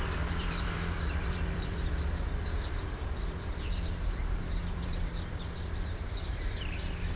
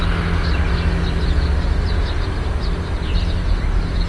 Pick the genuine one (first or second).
second